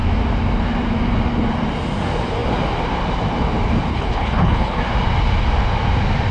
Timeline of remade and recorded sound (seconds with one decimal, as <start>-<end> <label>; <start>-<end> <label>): 0.0-3.9 recorded; 3.9-4.8 remade; 4.8-6.3 recorded